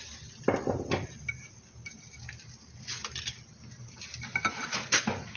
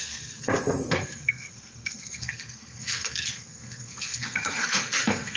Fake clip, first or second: second